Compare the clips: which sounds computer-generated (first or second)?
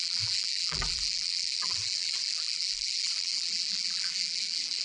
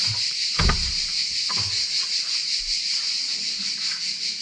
first